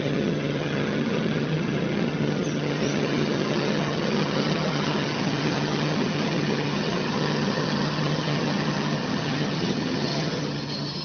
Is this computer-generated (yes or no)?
yes